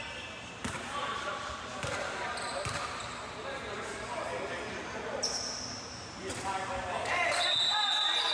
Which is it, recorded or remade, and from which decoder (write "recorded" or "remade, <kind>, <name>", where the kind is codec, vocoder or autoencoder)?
recorded